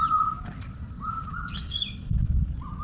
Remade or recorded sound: recorded